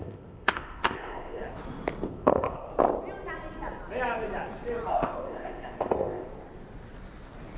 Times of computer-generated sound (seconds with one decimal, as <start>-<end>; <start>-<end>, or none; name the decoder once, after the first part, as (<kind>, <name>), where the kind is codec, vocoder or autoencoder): 0.0-1.4 (codec, ZipCodec); 2.1-2.7; 4.9-6.3